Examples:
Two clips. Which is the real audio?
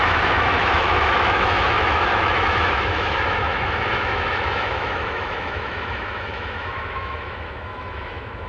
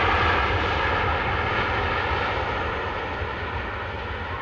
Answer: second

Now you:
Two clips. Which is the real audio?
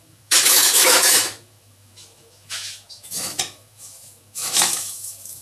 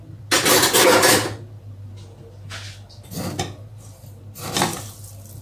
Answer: second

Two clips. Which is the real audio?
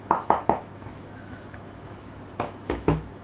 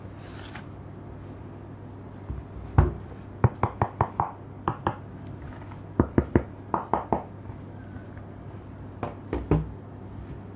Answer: second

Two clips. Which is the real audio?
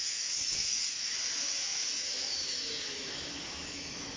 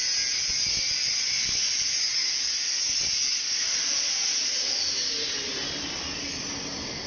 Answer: second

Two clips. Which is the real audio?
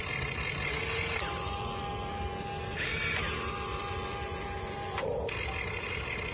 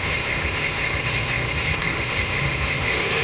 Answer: first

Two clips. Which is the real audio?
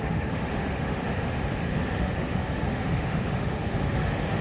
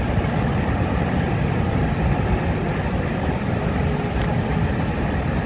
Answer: second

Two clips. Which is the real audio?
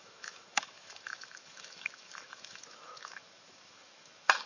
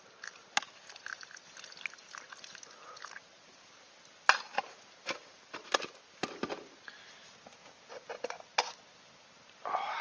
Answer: second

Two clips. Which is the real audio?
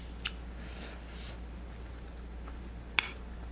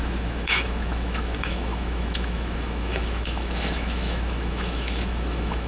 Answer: first